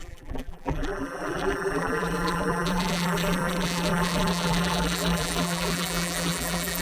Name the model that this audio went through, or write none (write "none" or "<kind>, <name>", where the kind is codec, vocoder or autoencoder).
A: vocoder, BigVGAN v2